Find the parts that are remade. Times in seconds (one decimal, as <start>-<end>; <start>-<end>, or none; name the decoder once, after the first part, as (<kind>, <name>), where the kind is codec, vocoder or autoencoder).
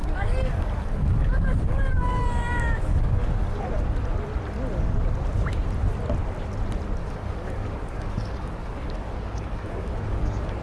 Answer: 0.0-3.6 (codec, DAC); 7.0-10.6